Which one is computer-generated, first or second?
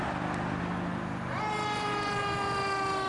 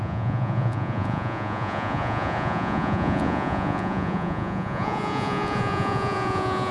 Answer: second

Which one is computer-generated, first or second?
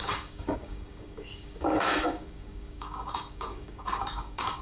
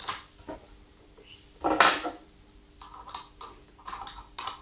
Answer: first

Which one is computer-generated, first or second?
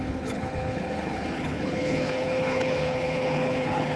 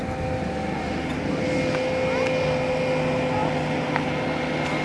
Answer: first